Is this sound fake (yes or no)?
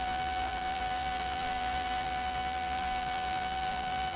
yes